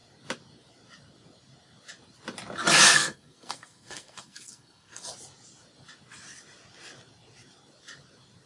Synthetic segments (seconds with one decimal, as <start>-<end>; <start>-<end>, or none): 2.9-5.1